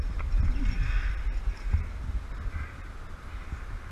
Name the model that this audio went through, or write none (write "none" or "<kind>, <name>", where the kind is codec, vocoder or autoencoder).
none